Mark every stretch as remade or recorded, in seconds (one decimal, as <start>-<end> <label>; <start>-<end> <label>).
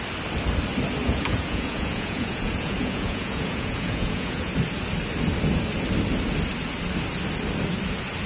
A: 0.0-1.0 recorded; 1.0-4.5 remade; 4.5-8.3 recorded